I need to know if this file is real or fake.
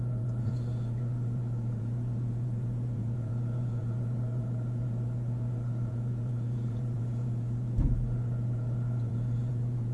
fake